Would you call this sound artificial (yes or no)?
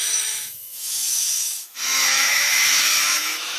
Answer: yes